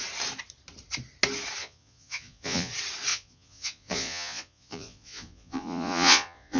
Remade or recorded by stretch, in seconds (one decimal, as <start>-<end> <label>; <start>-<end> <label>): 0.0-1.6 recorded; 1.6-2.7 remade; 2.7-3.1 recorded; 3.1-6.6 remade